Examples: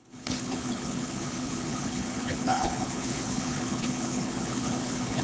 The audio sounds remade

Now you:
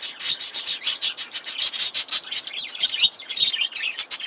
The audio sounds remade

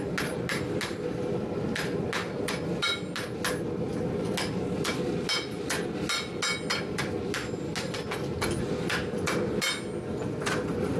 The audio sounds recorded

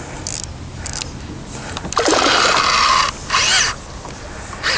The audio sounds recorded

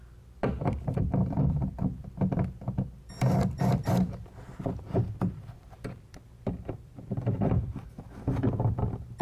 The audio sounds recorded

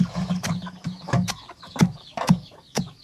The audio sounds remade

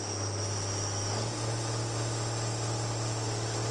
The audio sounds recorded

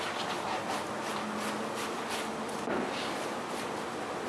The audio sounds recorded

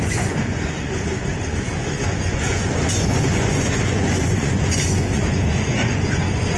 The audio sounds remade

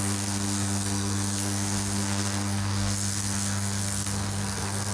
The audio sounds remade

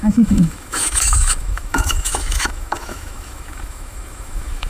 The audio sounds remade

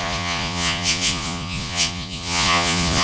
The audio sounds remade